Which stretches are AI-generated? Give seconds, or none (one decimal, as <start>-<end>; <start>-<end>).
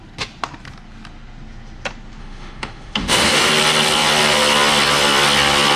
2.2-3.5